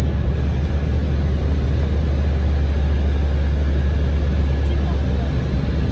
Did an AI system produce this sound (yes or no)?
no